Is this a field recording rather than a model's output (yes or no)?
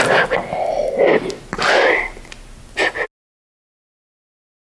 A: yes